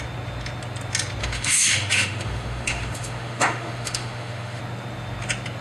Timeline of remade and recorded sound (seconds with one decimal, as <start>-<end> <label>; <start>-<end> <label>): 0.0-1.2 recorded; 1.2-4.6 remade; 4.6-5.6 recorded